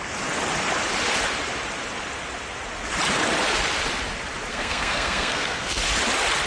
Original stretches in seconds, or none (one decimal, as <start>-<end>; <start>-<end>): 0.0-4.5; 5.8-6.5